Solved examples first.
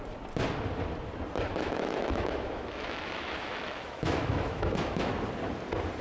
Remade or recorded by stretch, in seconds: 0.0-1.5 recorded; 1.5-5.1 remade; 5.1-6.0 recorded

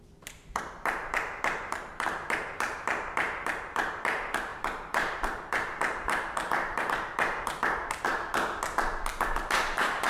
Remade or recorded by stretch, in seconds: 0.0-8.1 remade; 8.1-9.4 recorded; 9.4-10.1 remade

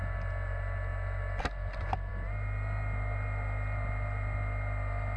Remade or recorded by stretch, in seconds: 0.0-5.2 recorded

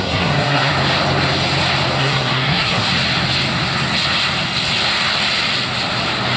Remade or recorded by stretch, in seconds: 0.0-0.7 remade; 0.7-2.0 recorded; 2.0-2.9 remade; 2.9-6.4 recorded

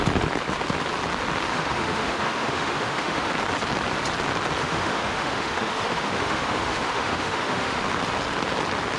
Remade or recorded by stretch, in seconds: 0.0-1.5 recorded; 1.5-3.3 remade; 3.3-4.6 recorded; 4.6-7.8 remade; 7.8-9.0 recorded

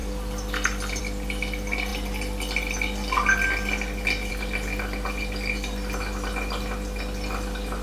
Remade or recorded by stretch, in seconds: 0.0-7.8 recorded

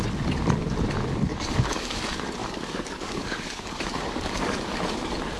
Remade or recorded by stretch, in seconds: 0.0-1.3 recorded; 1.3-2.0 remade; 2.0-2.4 recorded; 2.4-4.8 remade; 4.8-5.4 recorded

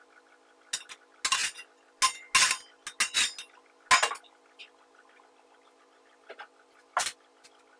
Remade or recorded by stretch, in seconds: 0.0-7.8 recorded